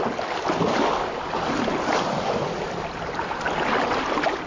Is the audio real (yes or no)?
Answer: yes